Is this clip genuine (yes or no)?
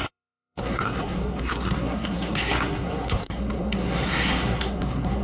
no